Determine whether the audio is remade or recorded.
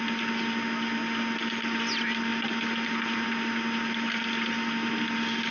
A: recorded